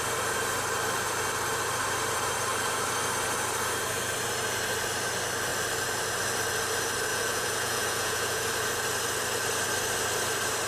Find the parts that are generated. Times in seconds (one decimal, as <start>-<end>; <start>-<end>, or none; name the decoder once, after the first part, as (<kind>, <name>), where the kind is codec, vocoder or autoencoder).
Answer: 7.1-8.5 (vocoder, Vocos)